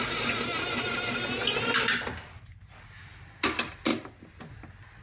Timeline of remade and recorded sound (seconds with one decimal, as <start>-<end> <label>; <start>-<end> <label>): 0.0-5.0 recorded